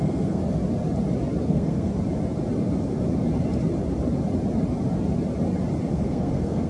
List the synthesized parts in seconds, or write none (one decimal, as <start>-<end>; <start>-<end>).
0.0-0.4; 1.4-1.9; 5.9-6.7